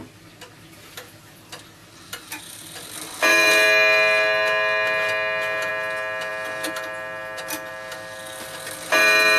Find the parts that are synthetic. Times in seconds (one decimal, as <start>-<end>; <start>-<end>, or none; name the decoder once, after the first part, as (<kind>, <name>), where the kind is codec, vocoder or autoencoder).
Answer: none